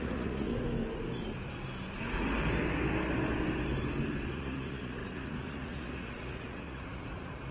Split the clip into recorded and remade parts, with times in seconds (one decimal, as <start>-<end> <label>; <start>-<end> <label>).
0.0-0.5 remade; 0.5-4.3 recorded; 4.3-7.5 remade